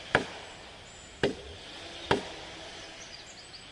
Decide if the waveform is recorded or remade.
recorded